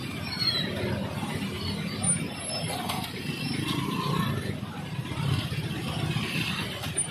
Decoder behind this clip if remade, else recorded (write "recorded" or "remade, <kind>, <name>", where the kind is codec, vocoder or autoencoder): recorded